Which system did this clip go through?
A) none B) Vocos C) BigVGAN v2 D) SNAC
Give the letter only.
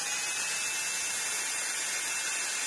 A